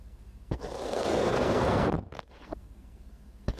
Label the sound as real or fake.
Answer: fake